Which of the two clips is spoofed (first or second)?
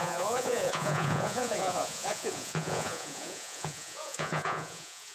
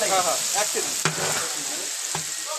first